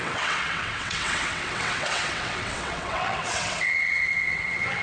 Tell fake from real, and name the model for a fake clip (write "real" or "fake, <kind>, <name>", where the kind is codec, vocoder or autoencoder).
fake, vocoder, WaveNeXt